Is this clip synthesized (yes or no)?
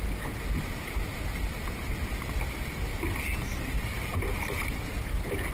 no